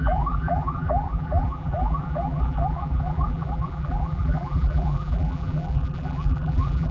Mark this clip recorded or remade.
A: remade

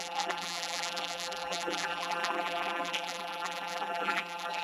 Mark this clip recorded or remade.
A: remade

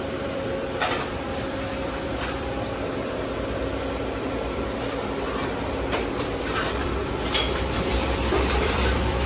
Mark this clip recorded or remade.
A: remade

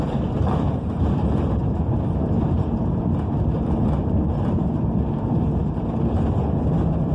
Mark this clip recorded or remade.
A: remade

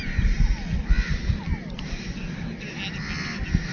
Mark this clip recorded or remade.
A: recorded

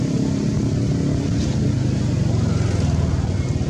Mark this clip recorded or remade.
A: recorded